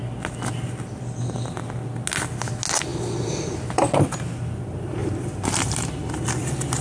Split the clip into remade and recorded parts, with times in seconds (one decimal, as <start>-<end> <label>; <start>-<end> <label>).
0.0-2.9 recorded; 2.9-3.8 remade; 3.8-5.0 recorded; 5.0-6.1 remade; 6.1-6.8 recorded